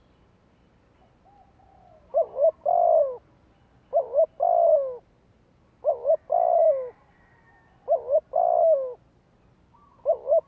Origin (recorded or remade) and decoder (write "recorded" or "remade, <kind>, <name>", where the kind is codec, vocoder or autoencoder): recorded